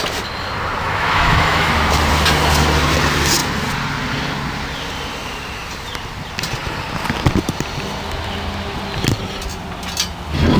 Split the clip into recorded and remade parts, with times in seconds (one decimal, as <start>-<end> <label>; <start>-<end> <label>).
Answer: 0.0-0.8 recorded; 0.8-1.7 remade; 1.7-10.6 recorded